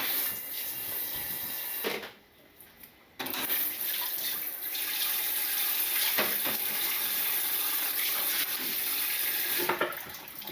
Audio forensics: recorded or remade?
recorded